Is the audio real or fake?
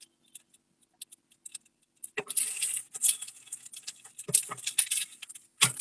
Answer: real